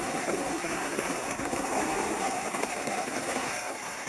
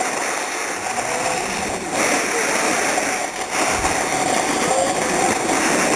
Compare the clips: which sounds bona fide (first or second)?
second